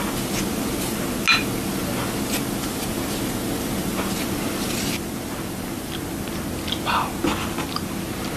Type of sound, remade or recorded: recorded